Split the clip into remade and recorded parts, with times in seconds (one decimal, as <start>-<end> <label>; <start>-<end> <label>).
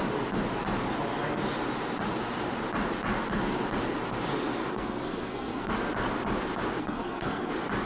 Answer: 0.0-4.7 recorded; 4.7-5.7 remade; 5.7-6.8 recorded; 6.8-7.5 remade; 7.5-7.9 recorded